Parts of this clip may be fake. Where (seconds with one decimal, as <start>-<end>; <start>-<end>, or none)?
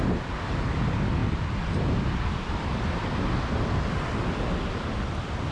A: none